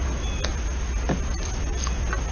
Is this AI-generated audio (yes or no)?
no